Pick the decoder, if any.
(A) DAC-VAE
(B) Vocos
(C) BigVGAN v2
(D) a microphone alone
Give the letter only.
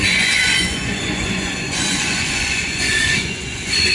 B